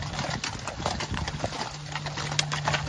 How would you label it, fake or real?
real